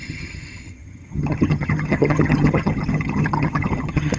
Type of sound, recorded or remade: remade